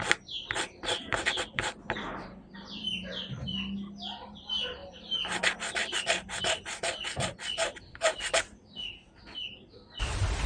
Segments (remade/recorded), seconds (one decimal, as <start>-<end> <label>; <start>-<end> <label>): 0.0-10.5 recorded